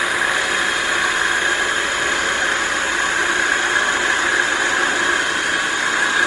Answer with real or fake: real